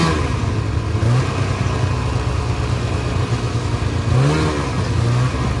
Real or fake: real